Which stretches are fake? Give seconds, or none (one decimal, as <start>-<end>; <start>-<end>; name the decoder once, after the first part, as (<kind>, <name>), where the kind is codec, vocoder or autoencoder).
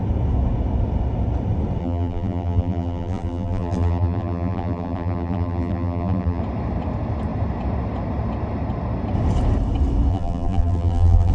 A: 1.8-6.4 (vocoder, BigVGAN v2); 10.1-11.3